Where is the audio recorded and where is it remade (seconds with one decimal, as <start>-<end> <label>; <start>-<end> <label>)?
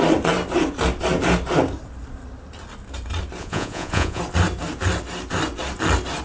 0.0-3.4 recorded; 3.4-4.2 remade; 4.2-6.2 recorded